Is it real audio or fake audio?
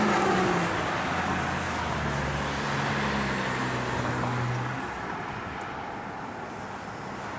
real